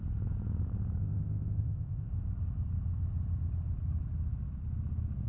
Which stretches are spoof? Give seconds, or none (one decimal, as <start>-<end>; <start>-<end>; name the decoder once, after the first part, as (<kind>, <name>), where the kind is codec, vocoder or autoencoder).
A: 1.0-2.1 (codec, ZipCodec)